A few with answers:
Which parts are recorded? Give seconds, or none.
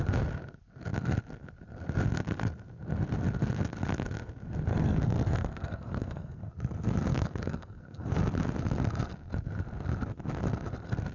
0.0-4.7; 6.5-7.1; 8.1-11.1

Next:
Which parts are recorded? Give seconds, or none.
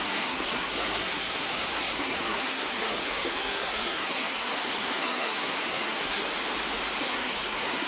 6.2-7.0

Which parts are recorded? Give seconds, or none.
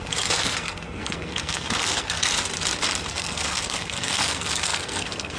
2.3-3.1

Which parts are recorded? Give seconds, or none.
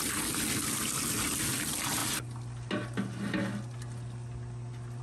0.0-5.0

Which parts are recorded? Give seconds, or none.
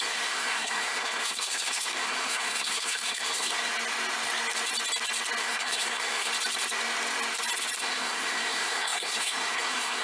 3.7-5.4; 6.3-7.8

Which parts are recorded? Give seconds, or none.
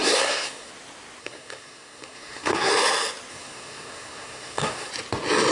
0.7-1.2; 2.7-3.3; 4.9-5.5